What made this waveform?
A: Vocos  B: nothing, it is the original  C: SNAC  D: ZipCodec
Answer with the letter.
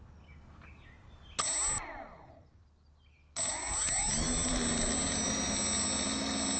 B